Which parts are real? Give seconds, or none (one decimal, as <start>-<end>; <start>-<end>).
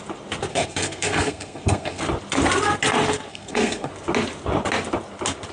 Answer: 0.0-0.5; 2.0-3.3; 3.9-5.5